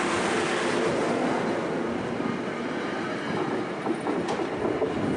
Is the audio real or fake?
real